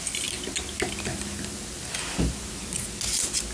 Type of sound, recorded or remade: recorded